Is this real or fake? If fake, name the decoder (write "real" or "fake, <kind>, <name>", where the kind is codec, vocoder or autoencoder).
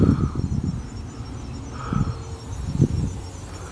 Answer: real